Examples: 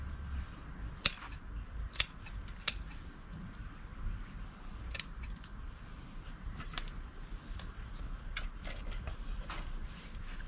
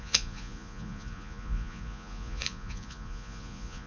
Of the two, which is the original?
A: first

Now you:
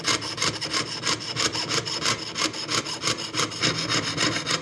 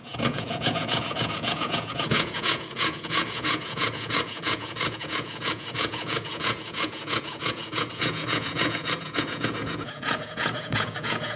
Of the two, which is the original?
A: first